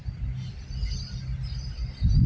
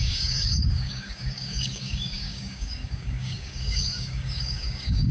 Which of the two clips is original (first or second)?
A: first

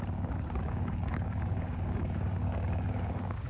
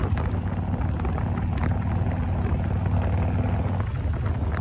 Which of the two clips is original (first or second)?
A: second